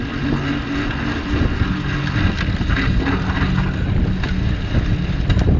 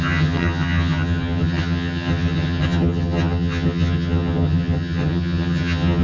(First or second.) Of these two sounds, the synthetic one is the second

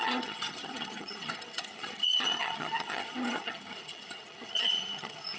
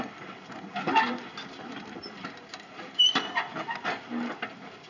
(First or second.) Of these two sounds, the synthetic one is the first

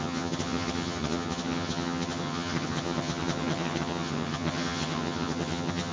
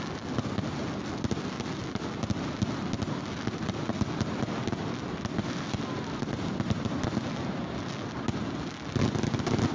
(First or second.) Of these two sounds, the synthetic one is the first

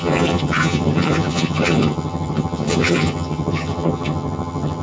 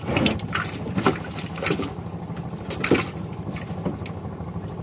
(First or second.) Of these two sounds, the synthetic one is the first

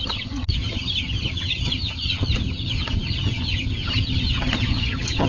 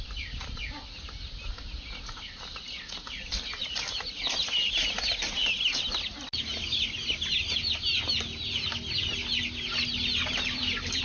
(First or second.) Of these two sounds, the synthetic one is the first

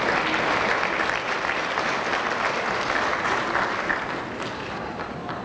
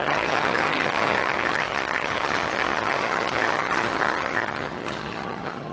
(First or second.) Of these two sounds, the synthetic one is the second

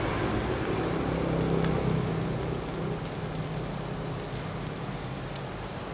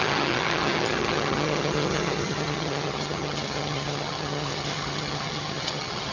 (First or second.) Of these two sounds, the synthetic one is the second